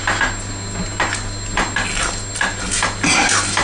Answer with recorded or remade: recorded